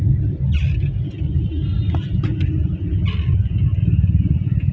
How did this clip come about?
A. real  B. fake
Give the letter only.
A